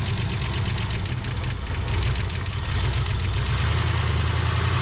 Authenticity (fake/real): real